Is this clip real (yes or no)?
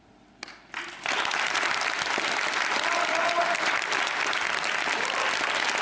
yes